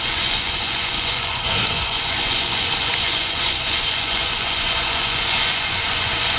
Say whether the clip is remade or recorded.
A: remade